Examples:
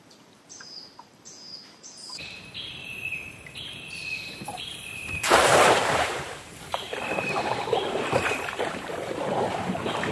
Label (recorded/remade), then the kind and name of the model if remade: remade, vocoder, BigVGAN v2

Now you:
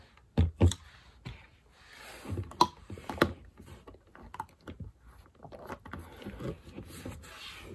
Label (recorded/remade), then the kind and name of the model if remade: recorded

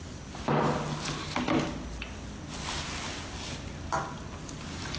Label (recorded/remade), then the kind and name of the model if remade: recorded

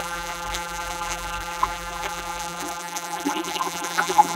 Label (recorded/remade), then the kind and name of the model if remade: remade, vocoder, BigVGAN v2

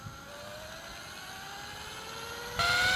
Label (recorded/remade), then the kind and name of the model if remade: recorded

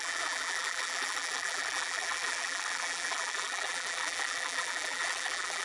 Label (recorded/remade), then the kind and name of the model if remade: remade, vocoder, BigVGAN v2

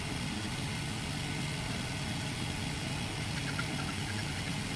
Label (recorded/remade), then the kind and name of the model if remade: recorded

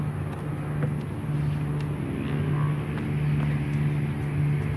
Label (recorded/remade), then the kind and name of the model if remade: recorded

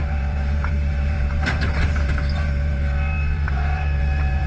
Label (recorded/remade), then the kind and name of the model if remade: remade, vocoder, BigVGAN v2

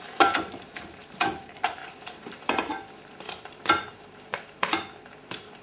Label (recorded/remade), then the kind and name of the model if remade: remade, vocoder, BigVGAN v2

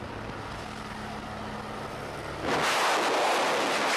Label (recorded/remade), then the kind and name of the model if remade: recorded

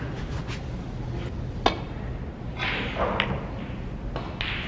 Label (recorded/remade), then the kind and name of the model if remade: recorded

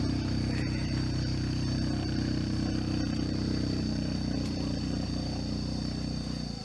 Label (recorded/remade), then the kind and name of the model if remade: remade, vocoder, BigVGAN v2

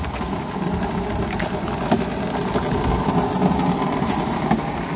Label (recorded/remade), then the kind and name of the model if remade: remade, vocoder, BigVGAN v2